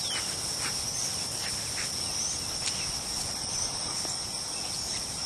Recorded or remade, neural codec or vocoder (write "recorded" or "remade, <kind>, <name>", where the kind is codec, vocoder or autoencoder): recorded